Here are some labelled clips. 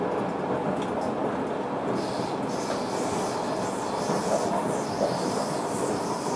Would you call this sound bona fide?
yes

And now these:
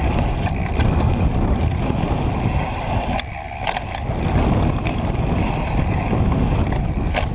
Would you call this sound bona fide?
yes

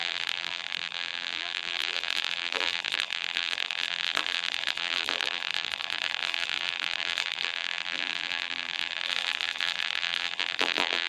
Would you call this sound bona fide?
no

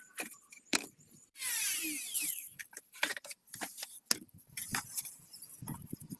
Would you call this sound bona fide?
no